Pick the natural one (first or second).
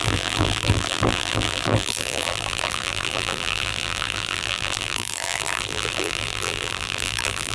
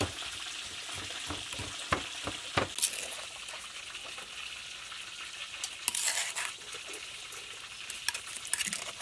second